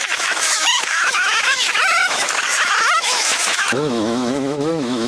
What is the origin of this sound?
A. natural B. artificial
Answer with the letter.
B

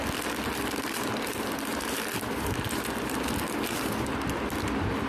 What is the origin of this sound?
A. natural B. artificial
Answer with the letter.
A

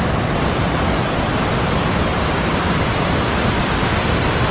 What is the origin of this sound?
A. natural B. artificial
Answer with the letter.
A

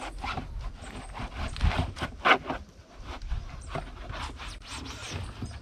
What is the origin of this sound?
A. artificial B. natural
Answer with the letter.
B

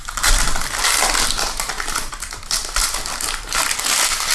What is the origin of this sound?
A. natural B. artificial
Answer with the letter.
A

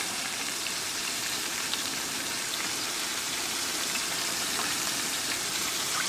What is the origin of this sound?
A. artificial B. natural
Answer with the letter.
A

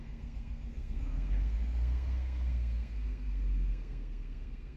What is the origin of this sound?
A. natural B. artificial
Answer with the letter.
B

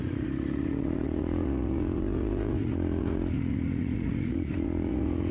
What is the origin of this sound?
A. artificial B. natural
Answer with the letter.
A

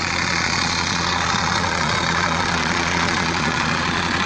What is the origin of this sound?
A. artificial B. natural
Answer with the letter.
A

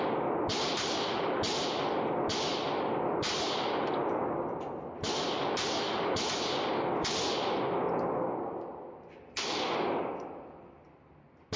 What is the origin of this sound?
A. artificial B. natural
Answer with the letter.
B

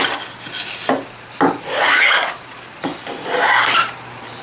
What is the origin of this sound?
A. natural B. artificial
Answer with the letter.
A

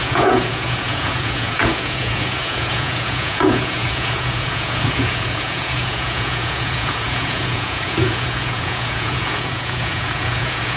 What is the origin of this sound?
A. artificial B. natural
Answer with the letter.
A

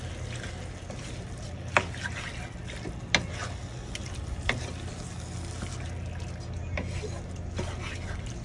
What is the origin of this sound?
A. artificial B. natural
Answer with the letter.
B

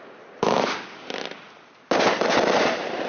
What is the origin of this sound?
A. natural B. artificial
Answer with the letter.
A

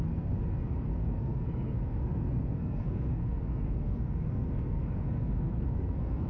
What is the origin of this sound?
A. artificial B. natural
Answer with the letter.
A